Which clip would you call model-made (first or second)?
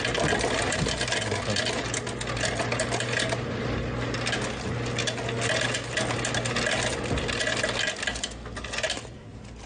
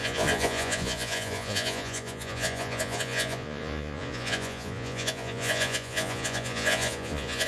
second